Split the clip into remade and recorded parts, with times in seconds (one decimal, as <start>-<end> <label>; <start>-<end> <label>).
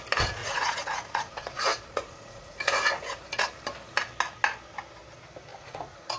0.0-0.4 recorded; 0.4-3.4 remade; 3.4-5.5 recorded; 5.5-6.2 remade